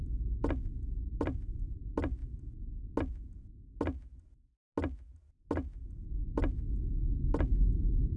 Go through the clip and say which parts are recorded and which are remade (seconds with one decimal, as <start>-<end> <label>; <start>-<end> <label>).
0.0-5.7 recorded; 5.7-6.2 remade; 6.2-8.2 recorded